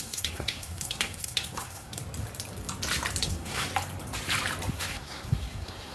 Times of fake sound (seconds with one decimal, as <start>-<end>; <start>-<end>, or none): 0.0-2.0; 3.2-3.7; 4.7-5.9